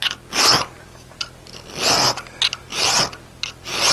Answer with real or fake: real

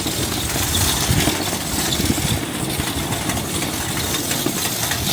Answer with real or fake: real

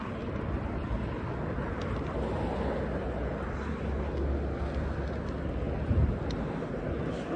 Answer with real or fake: real